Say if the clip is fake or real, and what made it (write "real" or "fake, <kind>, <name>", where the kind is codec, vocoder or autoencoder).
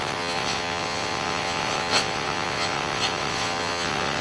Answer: fake, vocoder, WaveNeXt